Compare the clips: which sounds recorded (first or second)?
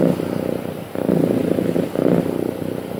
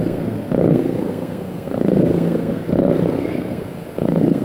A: first